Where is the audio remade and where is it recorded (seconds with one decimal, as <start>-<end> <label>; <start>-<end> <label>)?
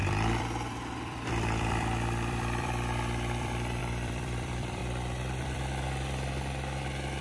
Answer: 0.0-4.8 remade; 4.8-5.4 recorded; 5.4-7.2 remade